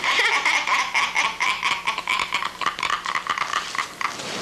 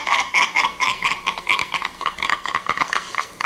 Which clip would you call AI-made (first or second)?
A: second